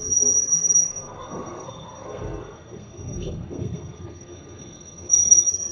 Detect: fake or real fake